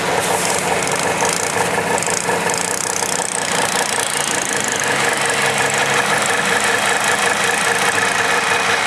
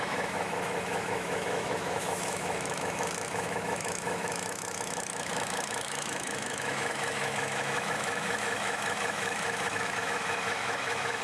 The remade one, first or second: second